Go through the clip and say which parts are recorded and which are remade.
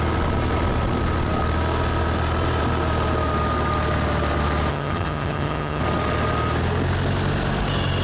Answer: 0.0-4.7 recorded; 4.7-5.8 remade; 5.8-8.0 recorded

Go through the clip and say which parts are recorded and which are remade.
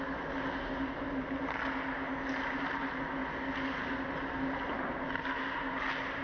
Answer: 0.0-6.2 recorded